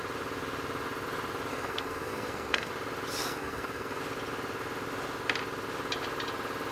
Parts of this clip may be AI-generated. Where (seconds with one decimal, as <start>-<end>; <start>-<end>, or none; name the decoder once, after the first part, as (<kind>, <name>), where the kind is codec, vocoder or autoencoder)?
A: 1.5-2.7 (codec, SNAC); 3.2-4.0

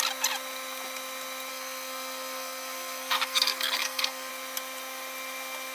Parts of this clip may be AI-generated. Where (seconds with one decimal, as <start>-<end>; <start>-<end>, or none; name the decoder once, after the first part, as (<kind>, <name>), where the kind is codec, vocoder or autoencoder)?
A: 1.5-4.3 (codec, SNAC)

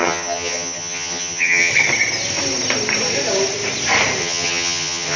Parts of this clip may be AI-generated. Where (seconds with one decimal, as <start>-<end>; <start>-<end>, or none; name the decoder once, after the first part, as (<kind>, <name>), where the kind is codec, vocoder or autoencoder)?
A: 0.0-1.7 (vocoder, HiFi-GAN); 4.2-5.2

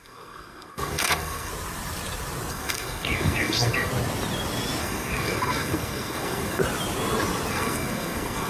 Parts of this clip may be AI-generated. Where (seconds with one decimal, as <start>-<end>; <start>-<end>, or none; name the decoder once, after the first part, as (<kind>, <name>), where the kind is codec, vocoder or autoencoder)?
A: 0.0-1.5 (codec, SNAC); 2.5-3.9; 4.8-6.6; 7.5-8.5

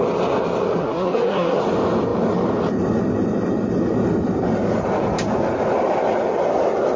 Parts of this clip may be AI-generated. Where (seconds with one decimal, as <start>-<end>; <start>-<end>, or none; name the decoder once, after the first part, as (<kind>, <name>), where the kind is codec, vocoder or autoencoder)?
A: 0.8-1.6 (codec, SNAC)

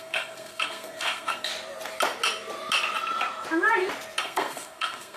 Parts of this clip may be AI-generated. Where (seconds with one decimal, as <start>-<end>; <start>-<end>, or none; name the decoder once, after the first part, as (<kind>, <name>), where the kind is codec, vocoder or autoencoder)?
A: 0.0-1.5 (codec, SNAC); 4.2-5.2